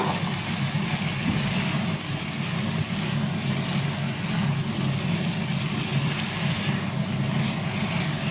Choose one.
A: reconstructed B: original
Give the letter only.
B